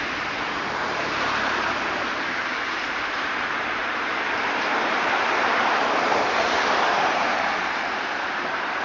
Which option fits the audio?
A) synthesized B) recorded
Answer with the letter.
A